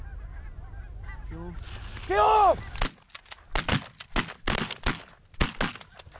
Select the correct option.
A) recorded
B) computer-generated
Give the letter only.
A